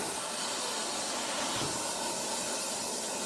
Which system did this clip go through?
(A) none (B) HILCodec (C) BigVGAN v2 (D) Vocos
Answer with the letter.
A